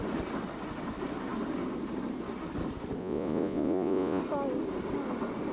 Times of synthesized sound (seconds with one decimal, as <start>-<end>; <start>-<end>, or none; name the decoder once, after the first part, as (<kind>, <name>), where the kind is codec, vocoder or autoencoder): 3.0-4.2 (vocoder, Vocos)